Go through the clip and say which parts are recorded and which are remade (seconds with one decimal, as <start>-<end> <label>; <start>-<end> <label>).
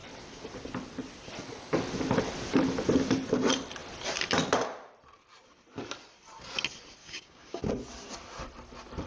0.0-7.0 recorded; 7.0-7.6 remade; 7.6-9.1 recorded